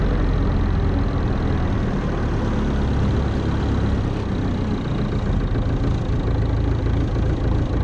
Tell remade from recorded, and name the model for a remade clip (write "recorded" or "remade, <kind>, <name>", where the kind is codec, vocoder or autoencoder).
recorded